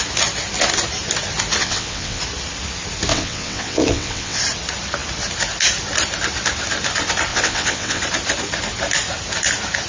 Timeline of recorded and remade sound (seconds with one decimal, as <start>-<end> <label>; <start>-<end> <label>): 0.0-1.6 recorded; 1.6-2.2 remade; 2.2-3.1 recorded; 3.1-4.4 remade; 4.4-7.3 recorded; 7.3-8.0 remade; 8.0-9.9 recorded